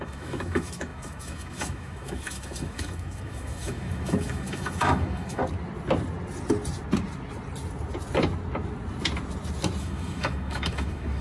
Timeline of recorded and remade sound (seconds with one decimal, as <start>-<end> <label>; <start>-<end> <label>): 0.0-5.4 remade; 5.4-9.8 recorded; 9.8-11.2 remade